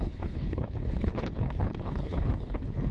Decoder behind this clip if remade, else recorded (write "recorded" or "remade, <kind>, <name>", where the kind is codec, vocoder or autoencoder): remade, codec, HILCodec